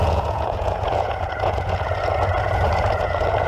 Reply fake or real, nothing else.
fake